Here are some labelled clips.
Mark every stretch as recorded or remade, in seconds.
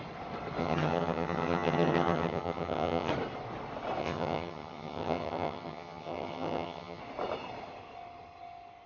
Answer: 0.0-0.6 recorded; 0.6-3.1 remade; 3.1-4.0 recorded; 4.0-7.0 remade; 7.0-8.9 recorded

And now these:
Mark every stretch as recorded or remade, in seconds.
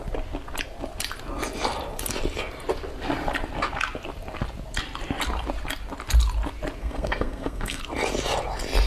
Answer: 0.0-6.8 recorded; 6.8-7.8 remade; 7.8-8.9 recorded